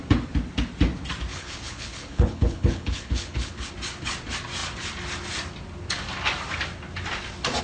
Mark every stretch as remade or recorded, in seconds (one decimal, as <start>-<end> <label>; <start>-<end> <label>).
0.0-1.3 recorded; 1.3-3.7 remade; 3.7-7.6 recorded